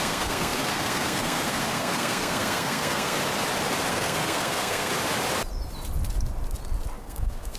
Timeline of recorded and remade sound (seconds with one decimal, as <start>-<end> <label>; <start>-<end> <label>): 0.0-3.2 remade; 3.2-3.9 recorded; 3.9-4.9 remade; 4.9-7.0 recorded; 7.0-7.6 remade